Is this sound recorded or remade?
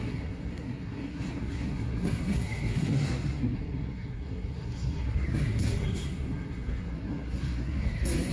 remade